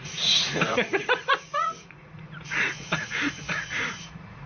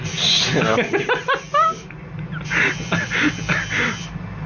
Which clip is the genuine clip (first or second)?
second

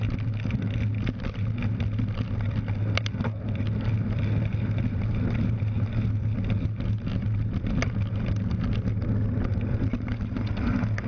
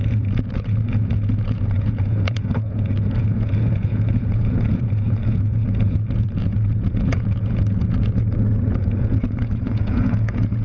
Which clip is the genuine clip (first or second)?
first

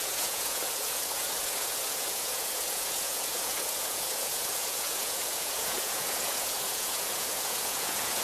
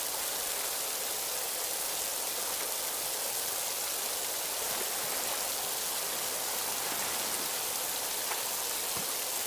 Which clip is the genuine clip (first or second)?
second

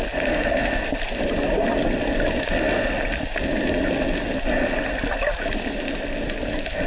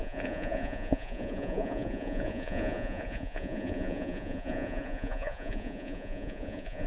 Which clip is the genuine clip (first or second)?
first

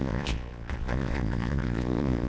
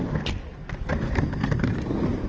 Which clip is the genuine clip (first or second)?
second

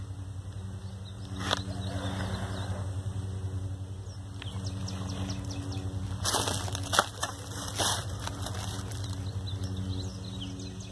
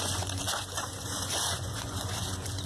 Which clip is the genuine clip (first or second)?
first